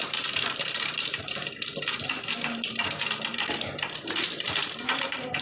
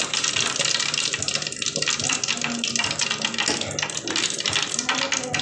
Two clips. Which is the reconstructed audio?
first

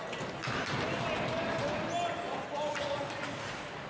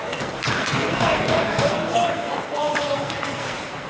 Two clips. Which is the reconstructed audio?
second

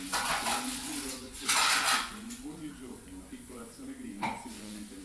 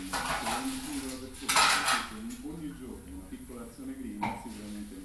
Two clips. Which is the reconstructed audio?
first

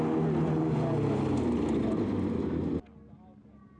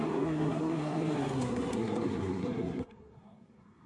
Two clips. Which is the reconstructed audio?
second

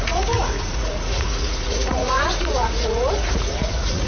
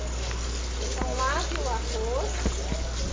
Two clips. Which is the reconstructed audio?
first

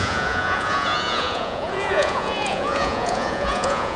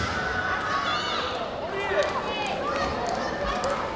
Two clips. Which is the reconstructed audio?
first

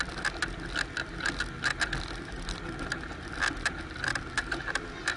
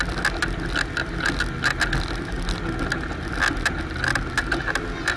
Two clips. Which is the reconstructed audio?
first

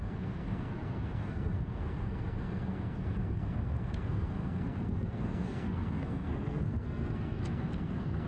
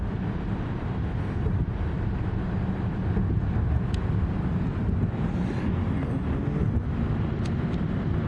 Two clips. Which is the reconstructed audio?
first